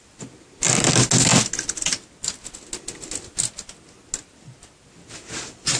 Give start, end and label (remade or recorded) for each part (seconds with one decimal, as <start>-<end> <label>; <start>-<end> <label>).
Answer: 0.0-5.8 recorded